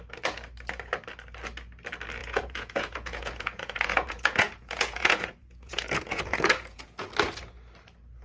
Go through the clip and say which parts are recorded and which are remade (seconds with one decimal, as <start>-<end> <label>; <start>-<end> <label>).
0.0-2.2 recorded; 2.2-7.1 remade; 7.1-8.2 recorded